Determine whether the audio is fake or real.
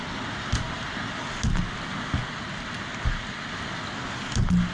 real